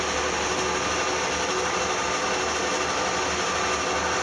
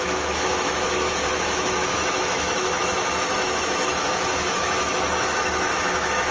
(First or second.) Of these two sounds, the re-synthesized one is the second